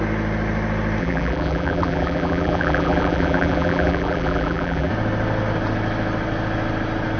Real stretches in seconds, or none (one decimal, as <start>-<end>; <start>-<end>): 0.0-1.0; 4.9-7.2